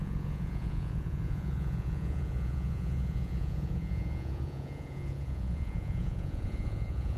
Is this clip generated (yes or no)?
yes